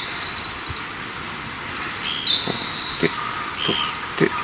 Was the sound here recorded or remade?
recorded